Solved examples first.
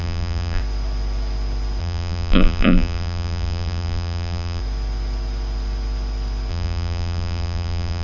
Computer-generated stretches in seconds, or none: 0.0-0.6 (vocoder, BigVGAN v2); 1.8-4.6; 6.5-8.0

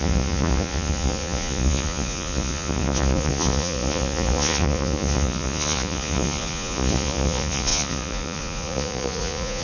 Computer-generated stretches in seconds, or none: 0.0-9.6 (vocoder, Vocos)

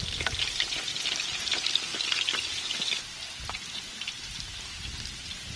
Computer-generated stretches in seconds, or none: none

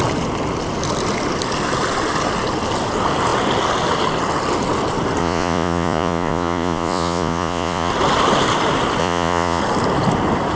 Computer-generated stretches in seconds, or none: 5.2-7.9 (vocoder, Vocos); 9.0-9.6

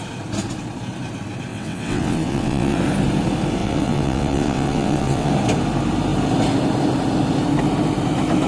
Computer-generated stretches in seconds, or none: 1.5-2.8 (vocoder, WaveNeXt); 3.6-5.3